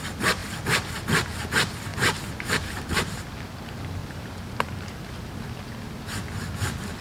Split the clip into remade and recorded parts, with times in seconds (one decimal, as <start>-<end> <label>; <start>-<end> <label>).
0.0-1.9 recorded; 1.9-3.2 remade; 3.2-4.0 recorded; 4.0-4.8 remade; 4.8-7.0 recorded